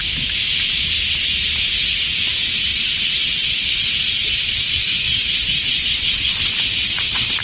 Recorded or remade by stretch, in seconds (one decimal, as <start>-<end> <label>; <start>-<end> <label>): 0.0-2.7 recorded; 2.7-6.4 remade; 6.4-7.4 recorded